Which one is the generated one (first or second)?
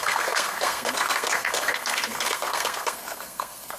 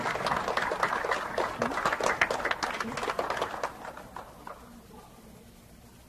first